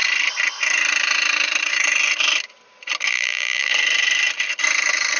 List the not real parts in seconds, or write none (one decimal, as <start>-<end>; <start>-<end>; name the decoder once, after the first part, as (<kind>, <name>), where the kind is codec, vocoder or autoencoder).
3.1-3.7 (vocoder, BigVGAN v2)